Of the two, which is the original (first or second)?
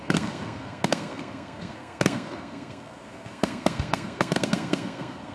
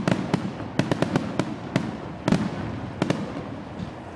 second